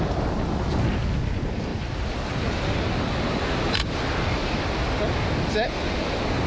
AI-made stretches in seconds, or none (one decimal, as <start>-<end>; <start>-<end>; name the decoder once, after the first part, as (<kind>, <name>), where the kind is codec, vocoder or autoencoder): none